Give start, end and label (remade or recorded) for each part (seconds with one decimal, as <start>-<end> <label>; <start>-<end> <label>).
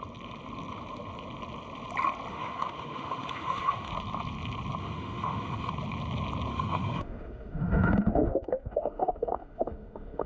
0.0-2.3 recorded; 2.3-3.9 remade; 3.9-4.8 recorded; 4.8-5.7 remade; 5.7-6.5 recorded; 6.5-10.3 remade